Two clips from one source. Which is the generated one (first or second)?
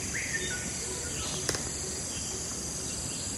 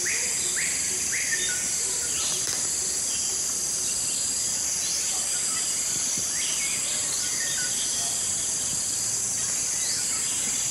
second